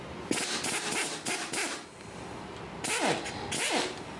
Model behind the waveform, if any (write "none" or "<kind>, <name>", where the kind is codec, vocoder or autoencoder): none